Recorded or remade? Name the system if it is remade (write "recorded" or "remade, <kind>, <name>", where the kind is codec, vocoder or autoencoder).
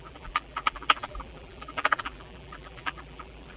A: remade, vocoder, BigVGAN v2